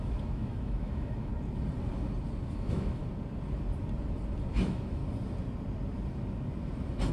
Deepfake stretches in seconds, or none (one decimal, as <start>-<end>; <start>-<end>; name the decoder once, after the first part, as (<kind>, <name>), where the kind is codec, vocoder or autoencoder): 0.0-1.3 (autoencoder, DAC-VAE); 2.5-3.0; 4.5-5.0